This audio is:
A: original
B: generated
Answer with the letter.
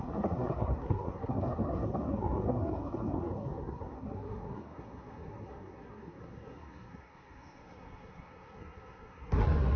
B